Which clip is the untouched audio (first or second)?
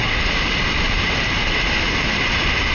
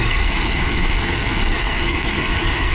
first